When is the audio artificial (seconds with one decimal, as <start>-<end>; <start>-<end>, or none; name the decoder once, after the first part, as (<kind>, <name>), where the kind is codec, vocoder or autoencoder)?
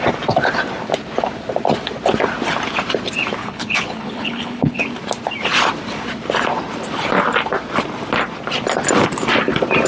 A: 3.4-4.8 (codec, HILCodec)